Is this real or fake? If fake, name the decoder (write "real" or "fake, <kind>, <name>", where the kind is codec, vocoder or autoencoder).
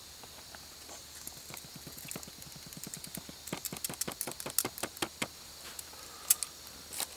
real